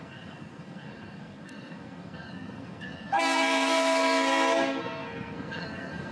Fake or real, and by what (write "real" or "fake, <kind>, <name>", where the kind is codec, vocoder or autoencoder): fake, codec, SNAC